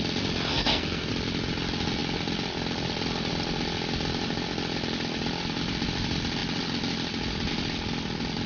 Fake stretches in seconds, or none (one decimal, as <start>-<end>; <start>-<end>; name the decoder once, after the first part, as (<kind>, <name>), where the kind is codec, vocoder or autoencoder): 0.5-1.1 (codec, SNAC)